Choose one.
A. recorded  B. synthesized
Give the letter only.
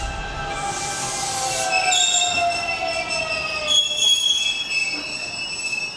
A